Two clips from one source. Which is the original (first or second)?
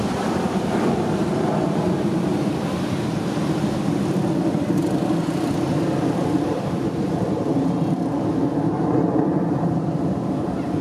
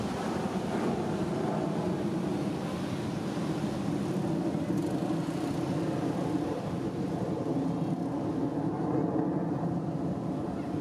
second